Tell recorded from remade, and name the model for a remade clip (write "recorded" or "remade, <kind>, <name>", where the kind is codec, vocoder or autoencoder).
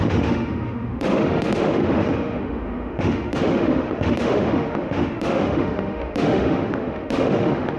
remade, autoencoder, DAC-VAE